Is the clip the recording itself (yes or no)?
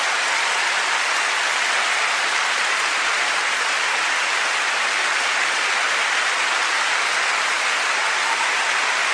yes